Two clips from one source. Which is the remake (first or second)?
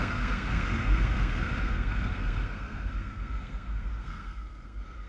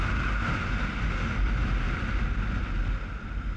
first